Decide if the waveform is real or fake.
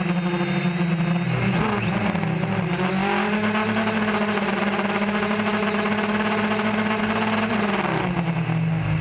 real